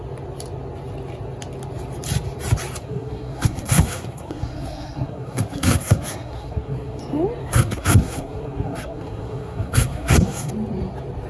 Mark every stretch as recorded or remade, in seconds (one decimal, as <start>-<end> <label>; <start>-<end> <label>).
0.0-2.8 recorded; 2.8-7.0 remade; 7.0-7.4 recorded; 7.4-10.5 remade; 10.5-11.3 recorded